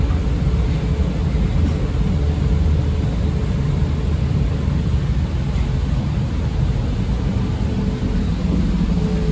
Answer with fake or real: real